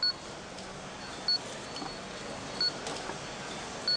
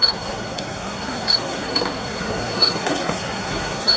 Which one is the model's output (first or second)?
second